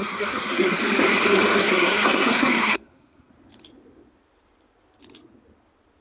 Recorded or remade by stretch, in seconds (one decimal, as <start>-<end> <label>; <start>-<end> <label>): 0.0-0.8 remade; 0.8-1.6 recorded; 1.6-3.3 remade; 3.3-6.0 recorded